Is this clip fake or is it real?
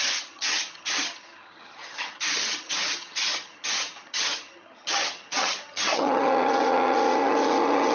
fake